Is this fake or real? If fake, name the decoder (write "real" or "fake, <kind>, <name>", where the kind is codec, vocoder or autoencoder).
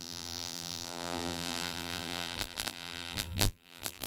fake, vocoder, BigVGAN v2